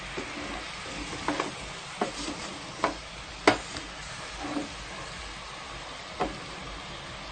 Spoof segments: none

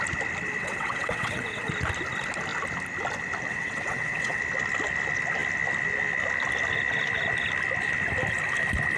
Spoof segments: 0.6-1.7 (vocoder, WaveNeXt); 3.5-4.4

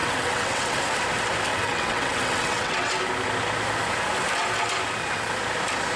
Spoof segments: 0.0-0.8 (vocoder, WaveNeXt); 1.5-2.9

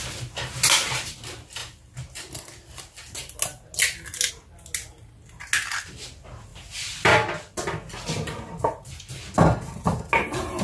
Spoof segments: none

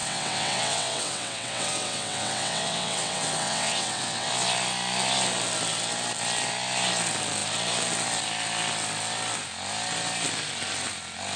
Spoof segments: 0.0-4.3 (vocoder, WaveNeXt)

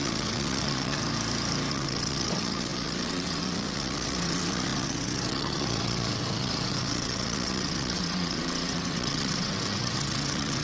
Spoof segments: 0.0-1.0 (vocoder, WaveNeXt); 1.7-10.6

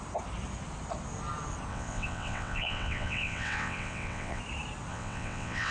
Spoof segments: 1.7-4.4 (vocoder, WaveNeXt); 4.9-5.7

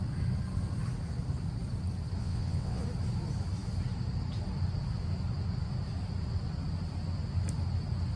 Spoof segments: 2.2-2.8 (vocoder, WaveNeXt)